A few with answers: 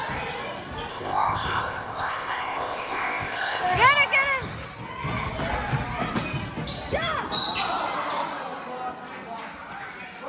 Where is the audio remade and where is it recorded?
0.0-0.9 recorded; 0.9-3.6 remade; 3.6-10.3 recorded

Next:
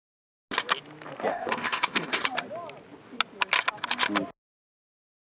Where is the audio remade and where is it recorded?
0.0-1.3 recorded; 1.3-2.2 remade; 2.2-5.3 recorded

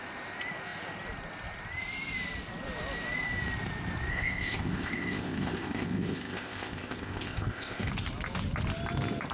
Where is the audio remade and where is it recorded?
0.0-4.1 recorded; 4.1-7.9 remade; 7.9-9.3 recorded

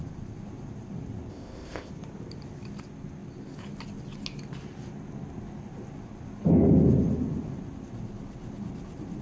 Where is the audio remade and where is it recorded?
0.0-1.3 recorded; 1.3-1.9 remade; 1.9-9.2 recorded

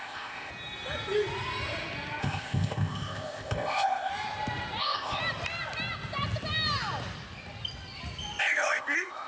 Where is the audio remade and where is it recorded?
0.0-0.5 remade; 0.5-2.2 recorded; 2.2-4.1 remade; 4.1-4.8 recorded; 4.8-5.2 remade; 5.2-8.4 recorded; 8.4-9.3 remade

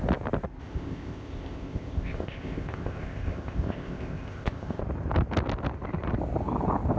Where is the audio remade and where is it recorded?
0.0-0.6 recorded; 0.6-4.8 remade; 4.8-7.0 recorded